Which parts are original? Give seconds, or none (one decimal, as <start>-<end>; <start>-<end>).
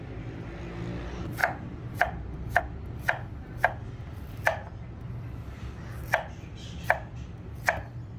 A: 0.0-1.4; 2.6-8.2